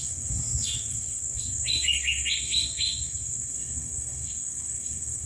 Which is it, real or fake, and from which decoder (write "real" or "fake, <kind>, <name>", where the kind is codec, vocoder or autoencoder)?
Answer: fake, codec, SNAC